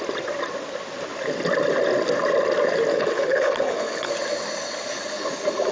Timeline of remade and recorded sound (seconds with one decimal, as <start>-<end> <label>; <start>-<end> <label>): 0.0-2.9 recorded; 2.9-4.1 remade; 4.1-5.7 recorded